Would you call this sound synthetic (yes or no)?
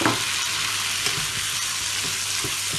no